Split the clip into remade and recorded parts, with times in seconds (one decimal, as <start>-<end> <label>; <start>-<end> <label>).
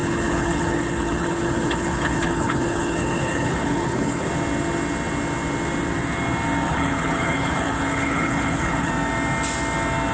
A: 0.0-4.3 remade; 4.3-6.7 recorded; 6.7-8.9 remade; 8.9-10.1 recorded